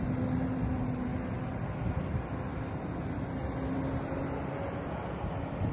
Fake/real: real